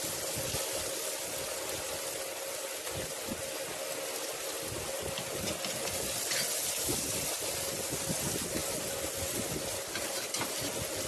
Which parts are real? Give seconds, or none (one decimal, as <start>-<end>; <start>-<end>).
0.0-11.1